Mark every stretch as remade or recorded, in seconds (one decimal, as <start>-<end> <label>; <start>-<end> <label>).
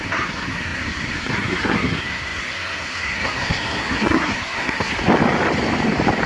0.0-4.9 remade; 4.9-6.3 recorded